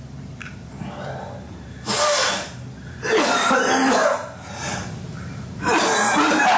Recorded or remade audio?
recorded